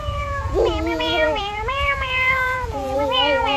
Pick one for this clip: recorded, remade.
remade